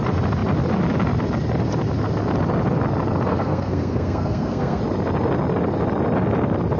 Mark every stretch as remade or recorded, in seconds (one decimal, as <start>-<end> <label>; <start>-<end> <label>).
0.0-3.3 recorded; 3.3-4.8 remade; 4.8-6.8 recorded